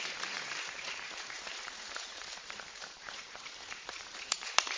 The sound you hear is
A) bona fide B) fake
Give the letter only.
B